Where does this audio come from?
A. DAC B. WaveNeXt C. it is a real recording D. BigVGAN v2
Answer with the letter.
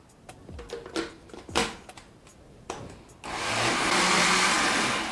C